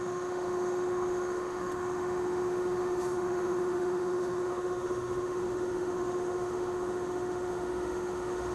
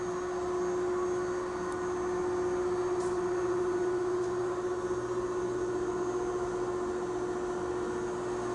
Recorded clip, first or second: second